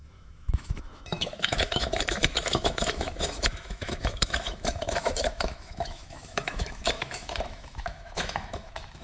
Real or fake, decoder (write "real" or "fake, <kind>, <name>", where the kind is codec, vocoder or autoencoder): fake, autoencoder, DAC-VAE